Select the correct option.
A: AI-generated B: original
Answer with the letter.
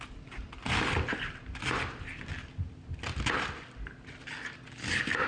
B